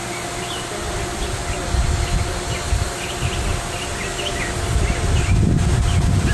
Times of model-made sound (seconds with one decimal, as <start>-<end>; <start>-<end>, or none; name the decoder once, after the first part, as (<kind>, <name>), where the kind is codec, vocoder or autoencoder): none